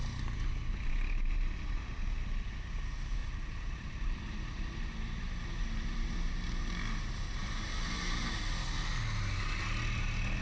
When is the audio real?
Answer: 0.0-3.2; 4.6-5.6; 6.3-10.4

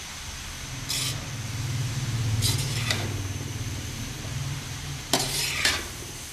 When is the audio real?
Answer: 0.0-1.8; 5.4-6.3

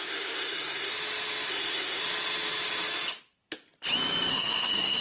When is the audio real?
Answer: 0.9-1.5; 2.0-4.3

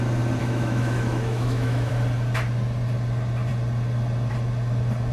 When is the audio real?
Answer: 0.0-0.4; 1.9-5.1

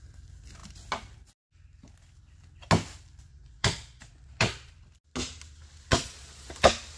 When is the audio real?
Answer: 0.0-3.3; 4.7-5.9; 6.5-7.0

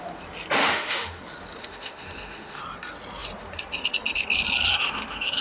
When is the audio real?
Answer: 0.0-0.6; 1.2-1.6; 2.6-4.7

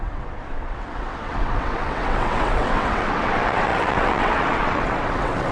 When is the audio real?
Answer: none

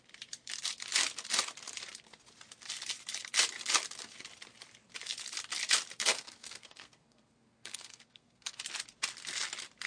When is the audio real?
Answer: 0.0-6.1; 8.6-9.9